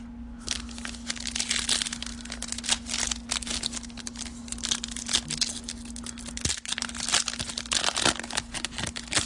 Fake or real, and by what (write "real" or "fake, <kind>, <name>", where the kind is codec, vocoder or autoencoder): real